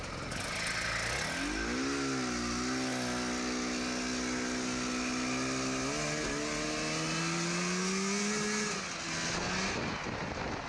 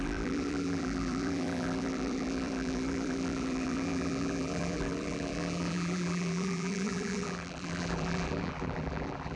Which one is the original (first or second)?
first